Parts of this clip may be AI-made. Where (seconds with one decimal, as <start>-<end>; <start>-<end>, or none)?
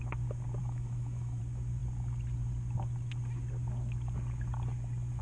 0.6-1.4